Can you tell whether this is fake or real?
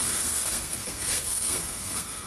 fake